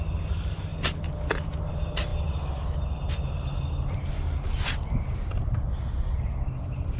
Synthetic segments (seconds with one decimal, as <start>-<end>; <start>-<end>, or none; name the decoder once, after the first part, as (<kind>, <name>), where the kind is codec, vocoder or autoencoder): none